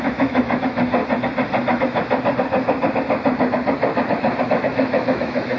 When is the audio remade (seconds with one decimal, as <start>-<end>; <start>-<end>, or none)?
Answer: 0.0-1.0; 4.4-5.6